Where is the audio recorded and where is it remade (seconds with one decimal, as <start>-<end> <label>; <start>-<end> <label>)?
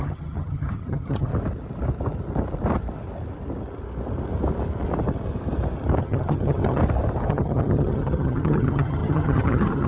0.0-1.3 remade; 1.3-6.0 recorded; 6.0-6.8 remade; 6.8-7.3 recorded; 7.3-9.9 remade